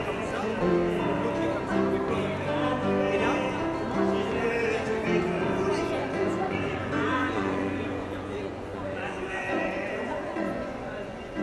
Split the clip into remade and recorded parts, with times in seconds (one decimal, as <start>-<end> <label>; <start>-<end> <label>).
0.0-0.7 remade; 0.7-5.2 recorded; 5.2-11.4 remade